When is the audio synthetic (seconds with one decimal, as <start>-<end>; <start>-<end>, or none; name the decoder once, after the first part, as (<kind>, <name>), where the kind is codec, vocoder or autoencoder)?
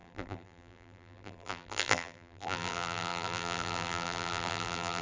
0.0-5.0 (vocoder, BigVGAN v2)